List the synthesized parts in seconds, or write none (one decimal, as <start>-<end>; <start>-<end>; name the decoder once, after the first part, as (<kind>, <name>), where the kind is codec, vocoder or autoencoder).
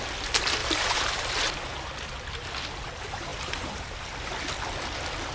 0.6-1.3 (vocoder, BigVGAN v2); 3.3-3.9